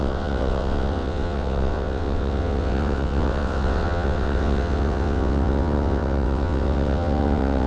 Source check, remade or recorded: remade